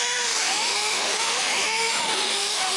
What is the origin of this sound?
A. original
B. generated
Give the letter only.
B